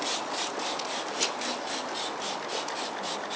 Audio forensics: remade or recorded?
recorded